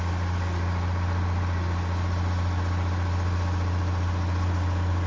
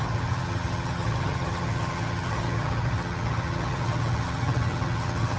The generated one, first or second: second